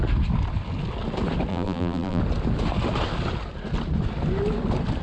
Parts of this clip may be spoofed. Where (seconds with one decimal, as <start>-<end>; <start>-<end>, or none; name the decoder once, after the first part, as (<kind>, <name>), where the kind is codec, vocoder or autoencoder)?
1.5-2.2 (vocoder, BigVGAN v2)